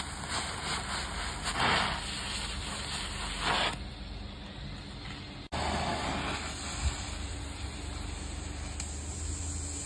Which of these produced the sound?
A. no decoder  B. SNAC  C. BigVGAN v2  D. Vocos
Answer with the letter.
A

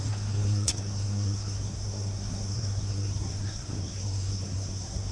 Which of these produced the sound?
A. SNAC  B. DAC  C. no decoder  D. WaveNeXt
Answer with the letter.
A